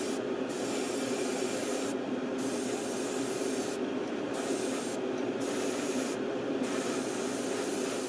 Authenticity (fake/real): real